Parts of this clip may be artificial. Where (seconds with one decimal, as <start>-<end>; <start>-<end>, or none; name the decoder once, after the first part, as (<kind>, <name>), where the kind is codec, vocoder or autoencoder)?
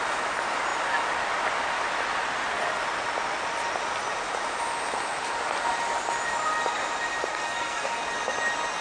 7.3-8.0 (codec, SNAC)